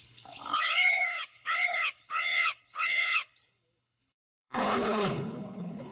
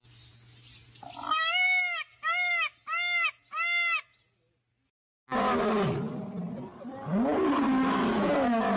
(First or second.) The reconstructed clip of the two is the first